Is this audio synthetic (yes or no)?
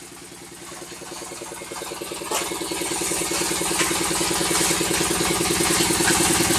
no